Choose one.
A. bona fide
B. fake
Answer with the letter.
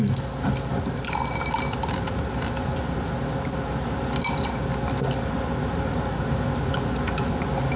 A